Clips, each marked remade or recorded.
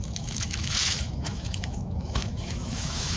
remade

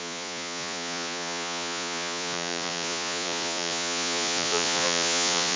remade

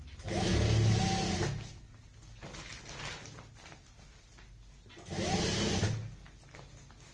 recorded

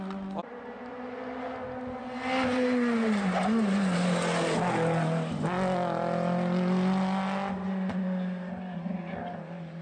recorded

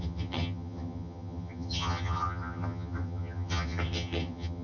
remade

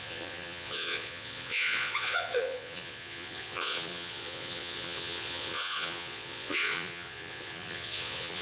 remade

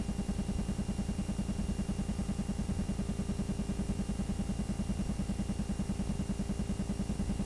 recorded